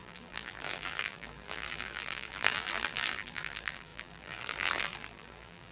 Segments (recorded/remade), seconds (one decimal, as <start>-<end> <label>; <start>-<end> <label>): 0.0-5.7 remade